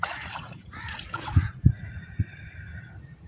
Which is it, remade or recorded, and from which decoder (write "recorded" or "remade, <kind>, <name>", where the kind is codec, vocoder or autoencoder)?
remade, vocoder, Vocos